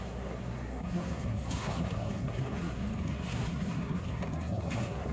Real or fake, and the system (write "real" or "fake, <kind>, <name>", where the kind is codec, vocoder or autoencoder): fake, codec, SNAC